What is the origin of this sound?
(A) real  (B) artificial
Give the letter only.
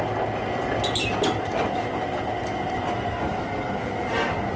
A